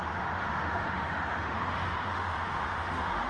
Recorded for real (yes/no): no